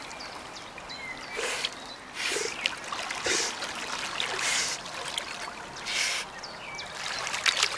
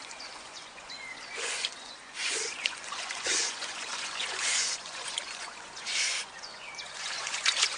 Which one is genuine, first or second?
first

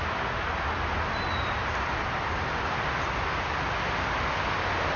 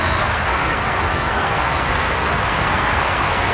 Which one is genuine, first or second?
first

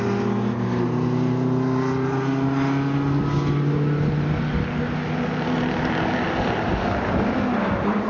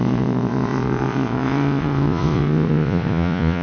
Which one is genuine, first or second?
first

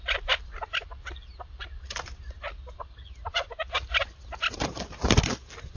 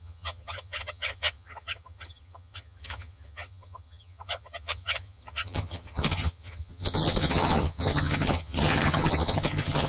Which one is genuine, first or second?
first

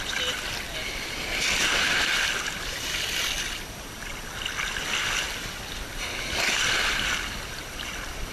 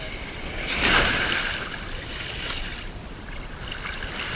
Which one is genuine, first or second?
first